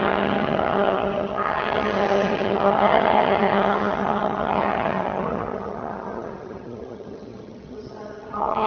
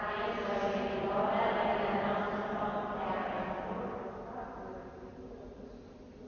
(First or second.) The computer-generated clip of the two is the first